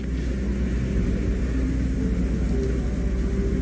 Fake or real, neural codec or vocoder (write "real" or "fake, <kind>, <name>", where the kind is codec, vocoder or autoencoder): real